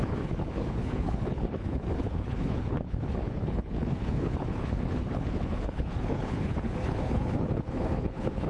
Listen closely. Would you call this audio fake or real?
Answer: fake